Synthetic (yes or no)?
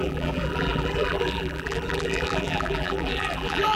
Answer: yes